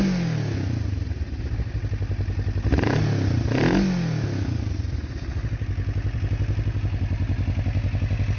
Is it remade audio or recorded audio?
recorded